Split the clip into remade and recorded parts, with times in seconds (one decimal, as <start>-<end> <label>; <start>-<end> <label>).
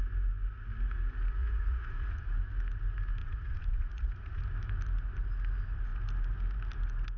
0.0-1.4 recorded; 1.4-2.2 remade; 2.2-3.2 recorded; 3.2-4.4 remade; 4.4-7.2 recorded